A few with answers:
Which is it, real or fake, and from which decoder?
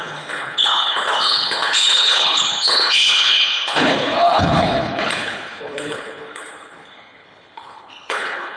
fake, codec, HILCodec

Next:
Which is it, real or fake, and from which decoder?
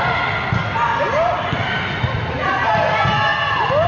real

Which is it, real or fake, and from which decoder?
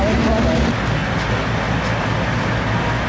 real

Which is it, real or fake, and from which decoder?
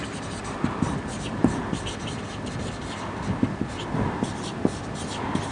fake, vocoder, BigVGAN v2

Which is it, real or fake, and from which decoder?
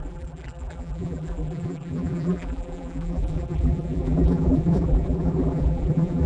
fake, vocoder, BigVGAN v2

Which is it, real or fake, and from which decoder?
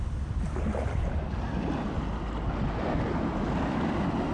real